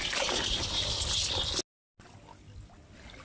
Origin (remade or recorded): recorded